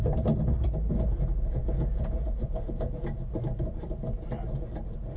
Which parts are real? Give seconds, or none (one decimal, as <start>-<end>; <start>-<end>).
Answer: 0.0-1.6; 3.0-5.2